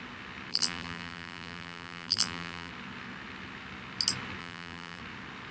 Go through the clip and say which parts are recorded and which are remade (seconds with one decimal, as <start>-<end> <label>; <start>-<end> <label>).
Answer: 0.0-0.5 recorded; 0.5-2.7 remade; 2.7-4.4 recorded; 4.4-5.0 remade; 5.0-5.5 recorded